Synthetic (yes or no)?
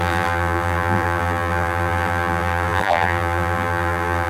yes